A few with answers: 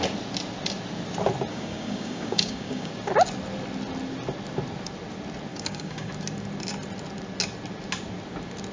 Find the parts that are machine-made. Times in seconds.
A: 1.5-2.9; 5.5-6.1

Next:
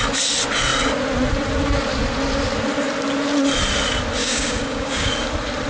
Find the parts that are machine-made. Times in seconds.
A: 4.2-5.1

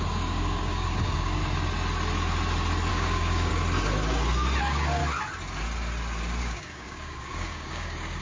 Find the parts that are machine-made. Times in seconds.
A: 0.0-1.4; 2.9-3.5; 4.6-5.0; 6.4-8.2

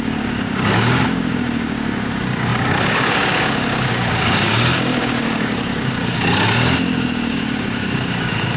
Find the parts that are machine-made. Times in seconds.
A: 0.0-8.6

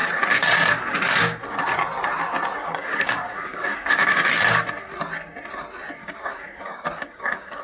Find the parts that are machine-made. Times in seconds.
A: 2.6-4.3; 6.0-7.6

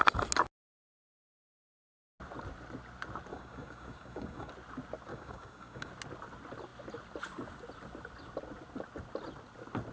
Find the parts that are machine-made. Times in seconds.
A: 3.3-4.5; 5.1-5.9

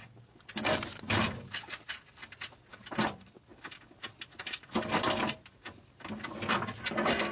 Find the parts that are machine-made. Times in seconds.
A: none

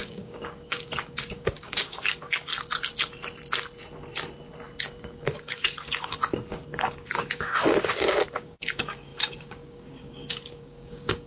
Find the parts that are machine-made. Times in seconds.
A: 0.0-2.5; 4.8-11.3